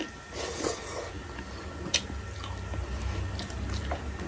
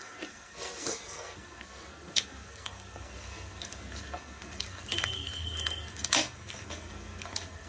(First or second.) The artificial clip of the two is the second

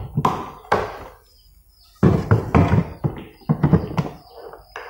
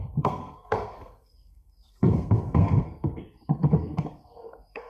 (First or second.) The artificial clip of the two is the second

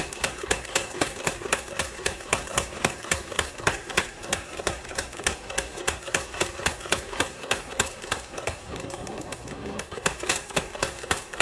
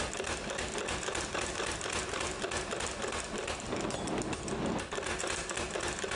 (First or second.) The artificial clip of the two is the first